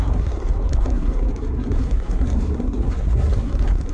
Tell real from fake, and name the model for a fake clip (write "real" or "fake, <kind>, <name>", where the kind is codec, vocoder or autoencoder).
fake, codec, SNAC